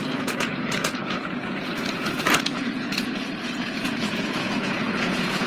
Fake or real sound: fake